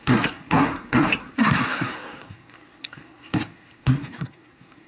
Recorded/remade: remade